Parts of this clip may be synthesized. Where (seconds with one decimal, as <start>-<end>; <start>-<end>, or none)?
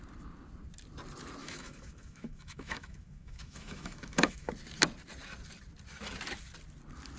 1.4-4.5